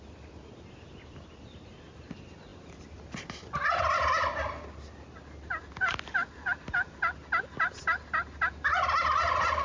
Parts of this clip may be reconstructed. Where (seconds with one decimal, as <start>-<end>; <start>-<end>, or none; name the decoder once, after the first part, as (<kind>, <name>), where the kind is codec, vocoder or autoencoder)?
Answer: none